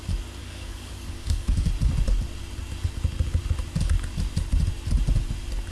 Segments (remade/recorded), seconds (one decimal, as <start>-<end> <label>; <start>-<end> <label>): 0.0-0.4 recorded; 0.4-1.7 remade; 1.7-5.7 recorded